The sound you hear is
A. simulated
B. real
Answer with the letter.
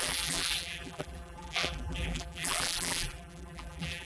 A